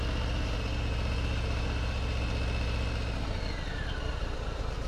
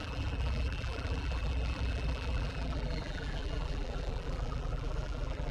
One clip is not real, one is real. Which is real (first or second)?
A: first